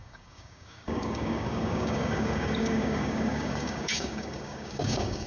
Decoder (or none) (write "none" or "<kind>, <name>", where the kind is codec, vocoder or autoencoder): codec, DAC